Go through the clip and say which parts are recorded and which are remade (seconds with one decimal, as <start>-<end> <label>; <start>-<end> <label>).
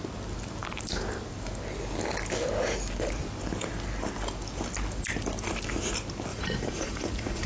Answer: 0.0-6.3 recorded; 6.3-7.5 remade